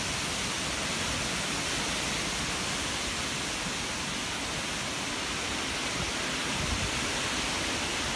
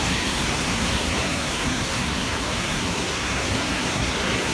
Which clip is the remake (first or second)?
second